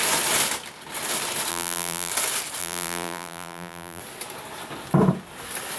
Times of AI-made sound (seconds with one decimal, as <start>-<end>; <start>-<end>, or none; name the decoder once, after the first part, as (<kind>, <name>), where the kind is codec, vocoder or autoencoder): 1.5-2.1 (vocoder, BigVGAN v2); 2.6-4.0